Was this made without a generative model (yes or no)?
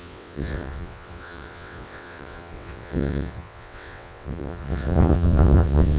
no